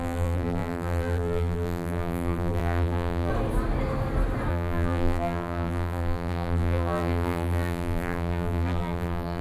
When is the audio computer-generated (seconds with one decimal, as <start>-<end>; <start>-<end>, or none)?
0.0-3.3; 4.5-9.4